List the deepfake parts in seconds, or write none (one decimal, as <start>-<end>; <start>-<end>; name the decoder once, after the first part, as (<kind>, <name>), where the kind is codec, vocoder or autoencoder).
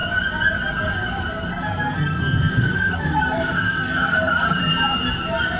1.5-4.6 (codec, SNAC)